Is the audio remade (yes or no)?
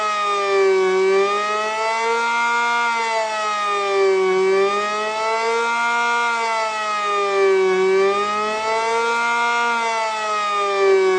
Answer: no